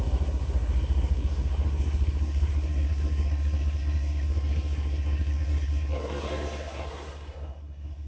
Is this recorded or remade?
remade